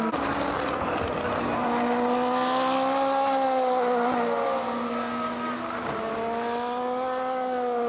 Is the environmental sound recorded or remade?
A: recorded